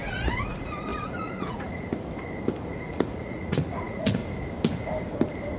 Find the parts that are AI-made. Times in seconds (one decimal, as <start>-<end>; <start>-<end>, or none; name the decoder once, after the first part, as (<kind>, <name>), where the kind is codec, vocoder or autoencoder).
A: 0.0-1.9 (vocoder, Vocos); 2.7-4.2

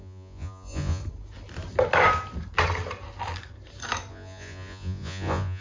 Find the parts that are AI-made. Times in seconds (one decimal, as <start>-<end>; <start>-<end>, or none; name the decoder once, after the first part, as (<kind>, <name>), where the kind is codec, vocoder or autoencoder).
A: 0.0-1.0 (vocoder, Vocos); 4.1-5.6

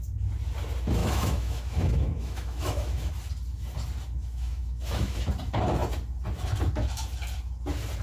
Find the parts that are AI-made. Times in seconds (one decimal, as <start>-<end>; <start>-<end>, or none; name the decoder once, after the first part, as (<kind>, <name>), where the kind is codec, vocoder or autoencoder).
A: 1.0-3.1 (autoencoder, DAC-VAE); 4.2-5.3

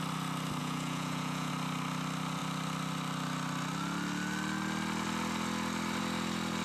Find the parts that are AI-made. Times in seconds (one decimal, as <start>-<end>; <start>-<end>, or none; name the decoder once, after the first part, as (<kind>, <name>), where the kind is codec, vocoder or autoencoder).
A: 0.6-1.5 (vocoder, Vocos)